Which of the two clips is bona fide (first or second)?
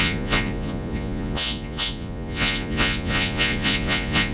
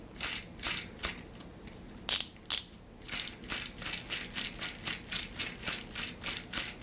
second